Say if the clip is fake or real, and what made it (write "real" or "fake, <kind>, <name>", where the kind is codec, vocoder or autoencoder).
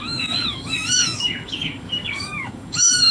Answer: fake, codec, DAC